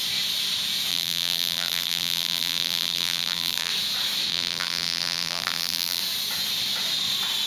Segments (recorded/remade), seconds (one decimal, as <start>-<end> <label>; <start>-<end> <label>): 0.0-0.9 recorded; 0.9-3.7 remade; 3.7-4.3 recorded; 4.3-6.0 remade; 6.0-7.5 recorded